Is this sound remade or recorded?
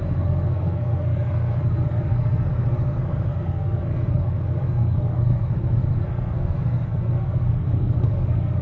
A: remade